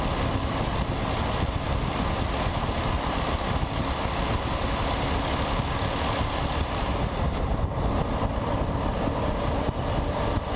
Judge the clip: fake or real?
real